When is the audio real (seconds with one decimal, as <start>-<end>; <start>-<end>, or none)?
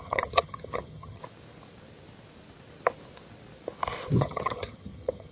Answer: 1.2-4.2